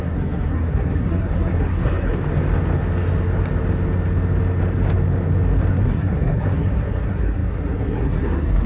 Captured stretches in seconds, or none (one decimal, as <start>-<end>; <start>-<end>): 2.1-5.7